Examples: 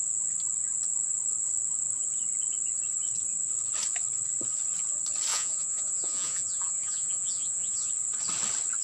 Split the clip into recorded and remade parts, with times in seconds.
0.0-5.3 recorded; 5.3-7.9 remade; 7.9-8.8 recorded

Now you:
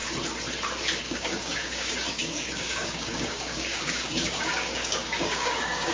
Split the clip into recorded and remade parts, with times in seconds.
0.0-1.0 recorded; 1.0-5.9 remade

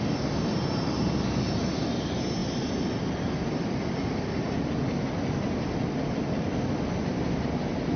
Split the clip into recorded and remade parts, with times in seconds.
0.0-8.0 recorded